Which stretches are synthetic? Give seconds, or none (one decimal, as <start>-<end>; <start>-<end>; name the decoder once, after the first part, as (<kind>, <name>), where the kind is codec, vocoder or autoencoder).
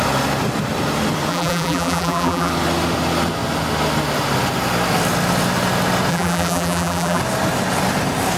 1.3-2.5 (vocoder, BigVGAN v2); 6.1-7.2